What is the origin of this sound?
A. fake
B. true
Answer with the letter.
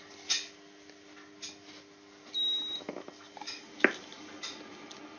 B